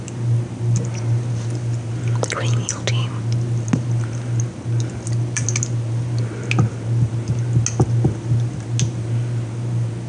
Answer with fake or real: real